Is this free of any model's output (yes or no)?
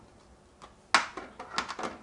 yes